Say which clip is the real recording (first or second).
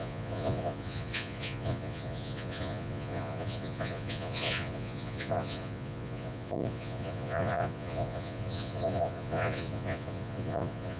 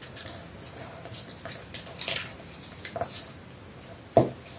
second